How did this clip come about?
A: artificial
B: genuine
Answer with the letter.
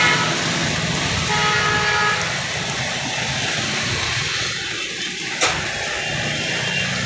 B